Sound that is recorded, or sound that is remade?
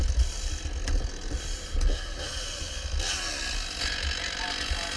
recorded